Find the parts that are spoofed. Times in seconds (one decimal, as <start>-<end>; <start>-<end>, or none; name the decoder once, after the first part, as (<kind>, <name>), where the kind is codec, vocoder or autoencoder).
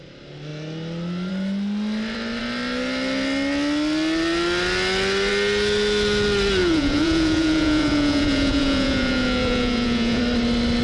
6.6-10.2 (vocoder, Vocos)